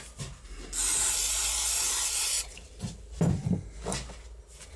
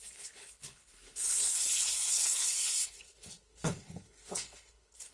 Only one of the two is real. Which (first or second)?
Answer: first